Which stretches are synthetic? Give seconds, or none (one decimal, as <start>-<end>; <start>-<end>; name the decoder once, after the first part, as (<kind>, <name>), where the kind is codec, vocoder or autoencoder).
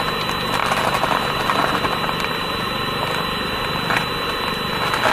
0.6-3.7 (vocoder, BigVGAN v2)